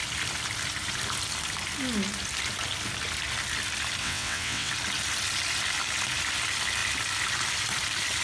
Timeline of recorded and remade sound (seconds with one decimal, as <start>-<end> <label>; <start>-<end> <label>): 0.0-4.0 recorded; 4.0-4.7 remade; 4.7-8.2 recorded